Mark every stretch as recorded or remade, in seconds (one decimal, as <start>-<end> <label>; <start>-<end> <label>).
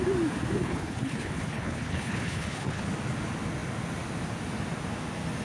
0.0-0.6 recorded; 0.6-2.8 remade; 2.8-5.4 recorded